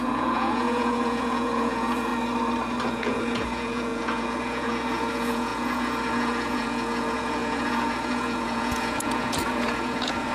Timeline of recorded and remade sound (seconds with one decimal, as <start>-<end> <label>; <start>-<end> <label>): 0.0-2.1 remade; 2.1-2.9 recorded; 2.9-10.3 remade